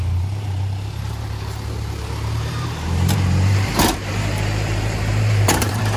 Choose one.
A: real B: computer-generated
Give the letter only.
B